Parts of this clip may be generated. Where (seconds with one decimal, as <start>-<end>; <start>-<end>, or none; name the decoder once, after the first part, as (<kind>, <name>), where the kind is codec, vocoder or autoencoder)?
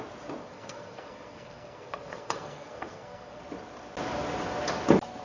0.4-3.4 (codec, SNAC)